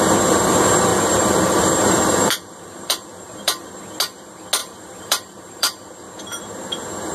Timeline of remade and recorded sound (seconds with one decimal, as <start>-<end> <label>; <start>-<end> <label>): 0.0-0.9 recorded; 0.9-3.7 remade; 3.7-4.6 recorded; 4.6-5.8 remade; 5.8-7.1 recorded